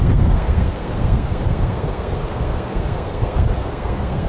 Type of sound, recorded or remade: remade